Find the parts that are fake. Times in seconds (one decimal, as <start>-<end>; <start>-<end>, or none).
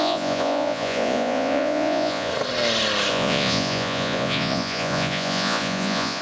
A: 0.0-2.3; 3.1-6.2